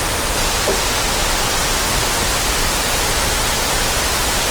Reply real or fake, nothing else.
real